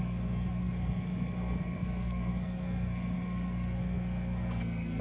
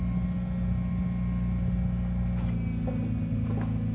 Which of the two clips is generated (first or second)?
first